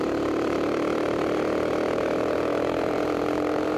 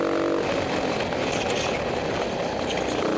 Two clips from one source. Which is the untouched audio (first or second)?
second